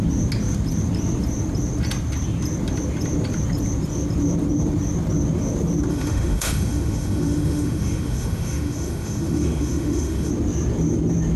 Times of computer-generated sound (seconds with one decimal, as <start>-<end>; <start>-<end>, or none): 5.9-10.3